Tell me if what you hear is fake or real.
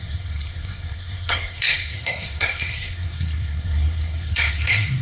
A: fake